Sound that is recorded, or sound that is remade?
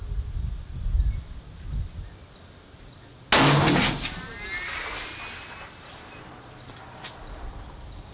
recorded